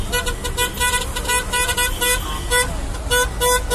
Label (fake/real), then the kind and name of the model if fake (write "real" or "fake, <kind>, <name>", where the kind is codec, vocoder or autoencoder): real